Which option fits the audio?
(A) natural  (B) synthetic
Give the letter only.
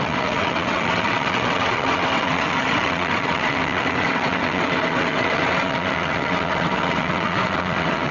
B